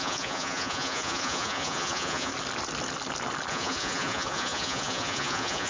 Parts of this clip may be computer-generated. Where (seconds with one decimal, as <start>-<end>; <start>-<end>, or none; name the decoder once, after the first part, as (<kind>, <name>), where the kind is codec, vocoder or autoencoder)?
0.0-2.3 (vocoder, Vocos); 3.5-5.7